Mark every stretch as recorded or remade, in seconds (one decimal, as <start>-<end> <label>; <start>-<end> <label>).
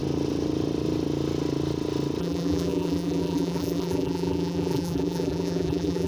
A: 0.0-2.2 recorded; 2.2-6.1 remade